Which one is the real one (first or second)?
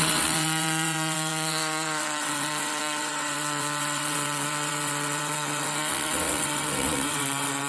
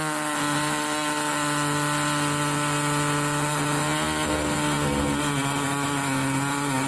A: second